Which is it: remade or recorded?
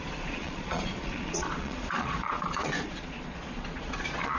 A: remade